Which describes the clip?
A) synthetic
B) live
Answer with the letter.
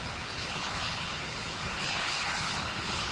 A